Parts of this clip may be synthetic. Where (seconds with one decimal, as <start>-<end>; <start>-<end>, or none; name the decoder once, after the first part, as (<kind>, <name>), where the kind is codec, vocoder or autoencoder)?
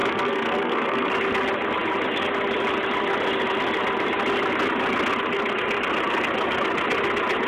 0.0-1.1 (codec, SNAC)